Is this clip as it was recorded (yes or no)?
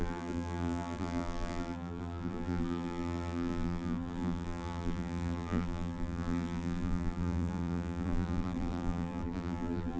no